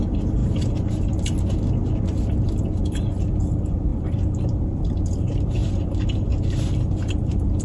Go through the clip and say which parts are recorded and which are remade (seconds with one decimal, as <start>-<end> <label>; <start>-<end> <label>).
0.0-7.6 remade